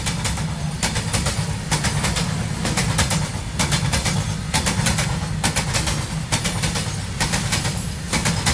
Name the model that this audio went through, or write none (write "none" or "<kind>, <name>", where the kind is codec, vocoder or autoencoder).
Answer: none